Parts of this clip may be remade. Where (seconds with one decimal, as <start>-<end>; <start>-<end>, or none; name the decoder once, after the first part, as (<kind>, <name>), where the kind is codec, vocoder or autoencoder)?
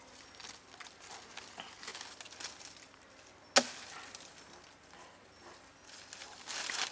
none